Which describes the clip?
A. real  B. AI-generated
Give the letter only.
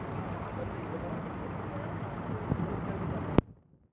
A